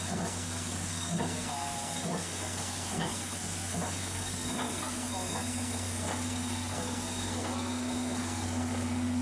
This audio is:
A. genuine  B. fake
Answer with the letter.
B